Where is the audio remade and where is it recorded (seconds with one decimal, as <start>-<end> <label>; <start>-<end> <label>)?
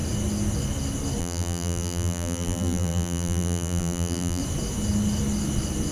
0.0-1.2 recorded; 1.2-4.4 remade; 4.4-5.9 recorded